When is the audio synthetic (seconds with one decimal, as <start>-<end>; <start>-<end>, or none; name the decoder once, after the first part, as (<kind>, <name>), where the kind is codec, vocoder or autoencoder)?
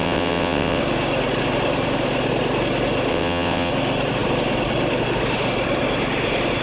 0.0-0.8 (vocoder, WaveNeXt); 3.1-3.7